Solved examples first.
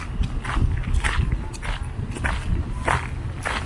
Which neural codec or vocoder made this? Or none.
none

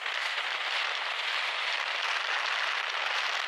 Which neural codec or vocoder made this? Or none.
none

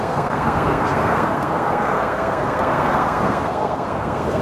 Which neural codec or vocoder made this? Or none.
codec, SNAC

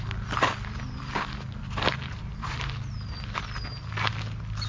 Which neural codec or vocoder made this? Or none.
none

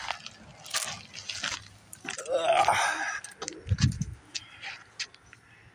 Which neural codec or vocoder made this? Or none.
none